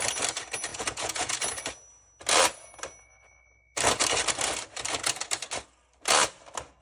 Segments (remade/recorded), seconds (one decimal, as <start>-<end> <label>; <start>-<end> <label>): 0.0-0.7 recorded; 0.7-1.4 remade; 1.4-6.8 recorded